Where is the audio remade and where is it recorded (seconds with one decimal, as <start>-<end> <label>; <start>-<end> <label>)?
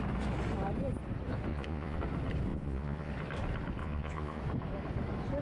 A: 0.0-1.5 recorded; 1.5-2.0 remade; 2.0-2.5 recorded; 2.5-3.1 remade; 3.1-3.8 recorded; 3.8-4.4 remade; 4.4-5.4 recorded